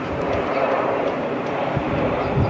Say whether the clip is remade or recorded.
remade